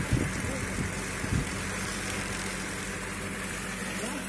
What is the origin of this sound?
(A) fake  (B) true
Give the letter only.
B